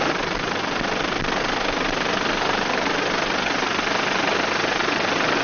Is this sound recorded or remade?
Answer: recorded